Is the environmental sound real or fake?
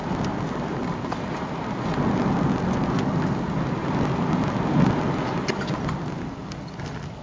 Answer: real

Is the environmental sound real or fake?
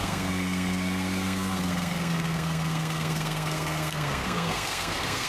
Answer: fake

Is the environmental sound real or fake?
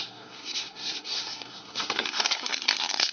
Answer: fake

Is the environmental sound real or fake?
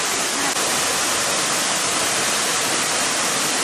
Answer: real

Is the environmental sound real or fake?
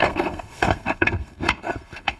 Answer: fake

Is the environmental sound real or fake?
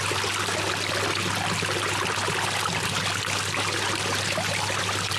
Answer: real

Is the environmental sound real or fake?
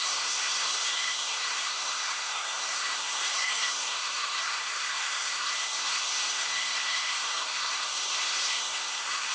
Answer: fake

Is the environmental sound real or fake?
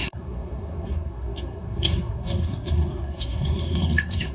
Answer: fake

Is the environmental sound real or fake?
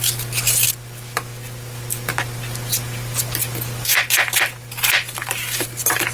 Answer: real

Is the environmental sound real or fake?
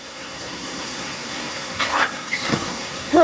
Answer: fake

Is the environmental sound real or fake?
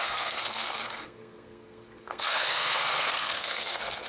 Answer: fake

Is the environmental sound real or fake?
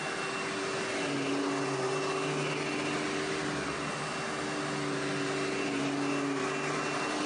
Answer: real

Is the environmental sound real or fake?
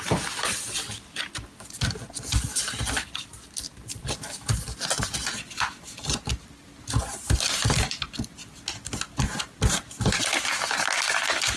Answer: real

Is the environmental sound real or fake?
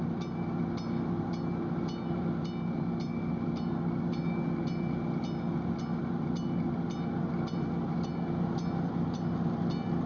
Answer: real